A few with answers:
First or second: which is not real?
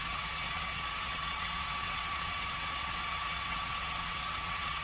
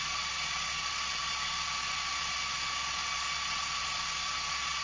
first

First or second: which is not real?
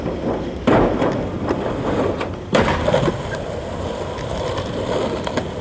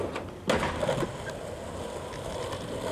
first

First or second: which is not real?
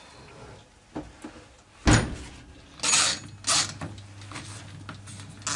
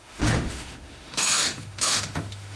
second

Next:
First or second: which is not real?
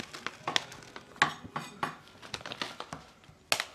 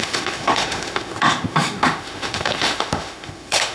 second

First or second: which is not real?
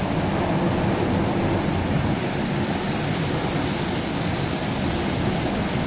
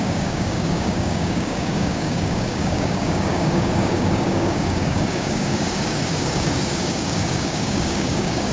second